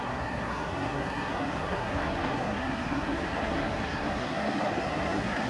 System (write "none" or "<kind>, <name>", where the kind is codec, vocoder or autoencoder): codec, SNAC